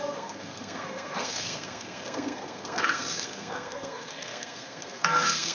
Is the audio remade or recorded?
remade